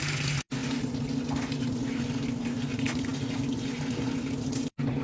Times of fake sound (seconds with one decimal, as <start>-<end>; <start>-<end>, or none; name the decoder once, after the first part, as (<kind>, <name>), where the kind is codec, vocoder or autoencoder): none